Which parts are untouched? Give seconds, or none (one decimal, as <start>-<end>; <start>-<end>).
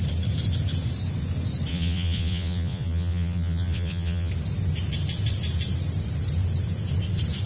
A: 0.0-1.7; 4.3-7.5